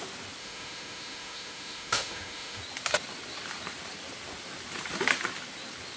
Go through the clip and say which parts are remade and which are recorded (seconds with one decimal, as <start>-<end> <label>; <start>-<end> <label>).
0.0-0.4 recorded; 0.4-2.6 remade; 2.6-6.0 recorded